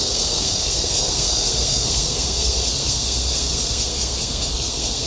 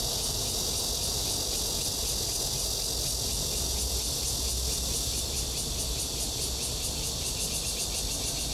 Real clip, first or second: second